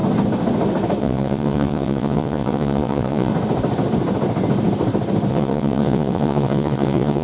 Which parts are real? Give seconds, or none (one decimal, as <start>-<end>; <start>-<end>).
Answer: 0.0-1.0; 3.3-5.3